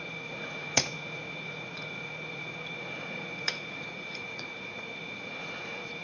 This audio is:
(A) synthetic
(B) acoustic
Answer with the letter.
A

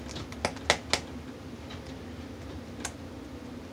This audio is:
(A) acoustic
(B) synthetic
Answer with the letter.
A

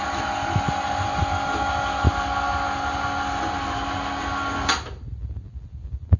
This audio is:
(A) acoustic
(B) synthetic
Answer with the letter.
A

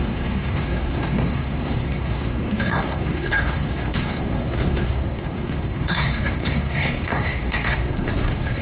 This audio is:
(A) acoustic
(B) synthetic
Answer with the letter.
B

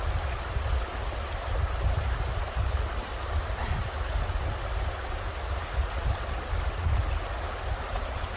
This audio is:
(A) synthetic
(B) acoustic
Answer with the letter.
B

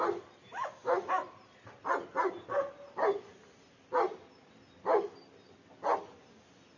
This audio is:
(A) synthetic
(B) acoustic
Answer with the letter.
B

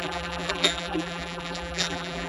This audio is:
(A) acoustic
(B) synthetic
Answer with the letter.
B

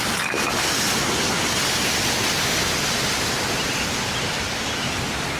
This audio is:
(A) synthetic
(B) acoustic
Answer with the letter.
B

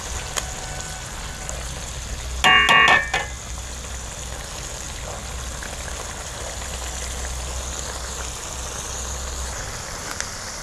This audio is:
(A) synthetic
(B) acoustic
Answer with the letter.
B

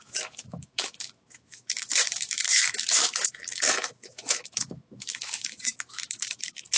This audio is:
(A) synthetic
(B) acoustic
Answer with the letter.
A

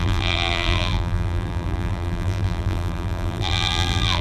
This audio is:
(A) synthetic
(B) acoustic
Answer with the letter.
A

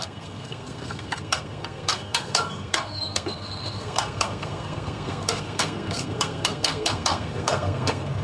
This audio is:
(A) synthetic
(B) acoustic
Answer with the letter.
A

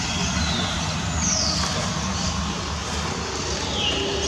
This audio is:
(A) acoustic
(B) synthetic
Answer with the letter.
A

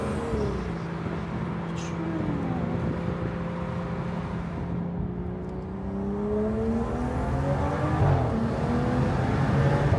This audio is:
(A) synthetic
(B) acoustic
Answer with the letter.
B